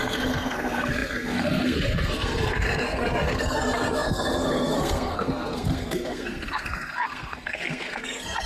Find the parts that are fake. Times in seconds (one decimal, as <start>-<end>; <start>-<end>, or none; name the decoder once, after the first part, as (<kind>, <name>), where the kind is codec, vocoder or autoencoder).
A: 0.0-8.5 (codec, SNAC)